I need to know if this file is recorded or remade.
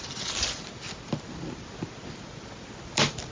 recorded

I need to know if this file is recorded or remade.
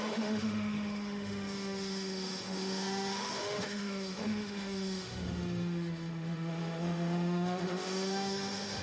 remade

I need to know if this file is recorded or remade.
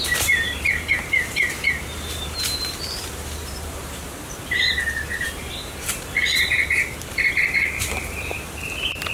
remade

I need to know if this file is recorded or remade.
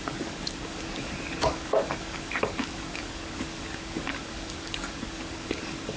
remade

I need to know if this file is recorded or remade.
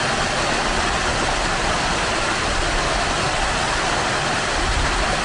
recorded